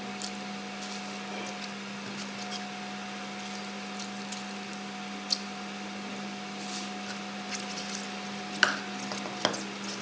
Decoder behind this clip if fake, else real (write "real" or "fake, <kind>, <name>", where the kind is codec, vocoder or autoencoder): real